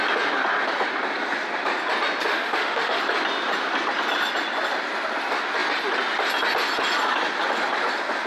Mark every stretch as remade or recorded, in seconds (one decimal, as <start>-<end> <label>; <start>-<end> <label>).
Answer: 0.0-2.3 recorded; 2.3-3.0 remade; 3.0-8.3 recorded

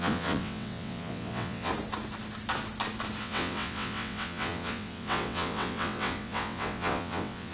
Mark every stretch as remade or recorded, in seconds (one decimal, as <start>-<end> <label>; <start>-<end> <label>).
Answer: 0.0-1.7 remade; 1.7-3.2 recorded; 3.2-7.5 remade

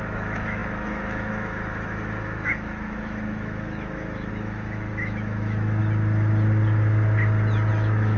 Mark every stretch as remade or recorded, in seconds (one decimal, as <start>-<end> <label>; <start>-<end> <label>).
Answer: 0.0-5.8 remade; 5.8-7.7 recorded; 7.7-8.2 remade

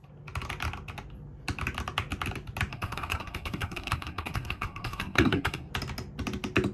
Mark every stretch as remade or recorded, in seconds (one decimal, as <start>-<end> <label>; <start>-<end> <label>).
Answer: 0.0-2.7 recorded; 2.7-5.7 remade; 5.7-6.7 recorded